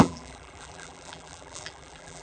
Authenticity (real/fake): fake